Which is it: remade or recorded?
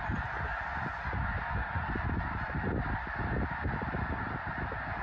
recorded